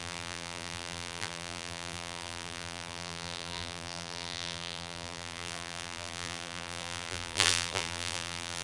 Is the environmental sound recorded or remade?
remade